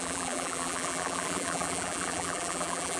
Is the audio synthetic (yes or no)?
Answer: yes